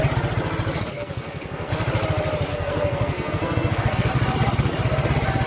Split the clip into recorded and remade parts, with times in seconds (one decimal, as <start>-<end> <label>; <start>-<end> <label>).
0.0-0.9 recorded; 0.9-1.7 remade; 1.7-2.5 recorded; 2.5-4.1 remade; 4.1-5.5 recorded